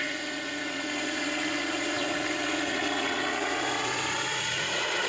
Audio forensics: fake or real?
fake